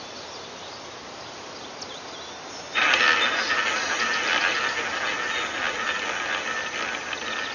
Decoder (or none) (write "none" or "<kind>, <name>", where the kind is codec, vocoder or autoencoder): none